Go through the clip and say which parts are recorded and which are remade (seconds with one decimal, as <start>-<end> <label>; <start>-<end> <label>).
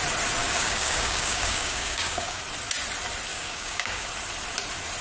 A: 0.0-0.4 recorded; 0.4-2.4 remade; 2.4-3.3 recorded; 3.3-4.1 remade; 4.1-5.0 recorded